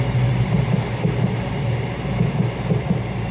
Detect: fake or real real